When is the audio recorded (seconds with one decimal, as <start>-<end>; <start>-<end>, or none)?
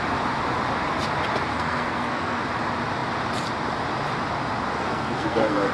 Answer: 0.0-1.5; 2.4-4.8